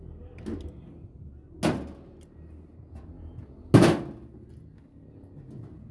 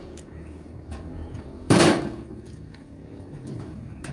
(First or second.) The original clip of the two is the first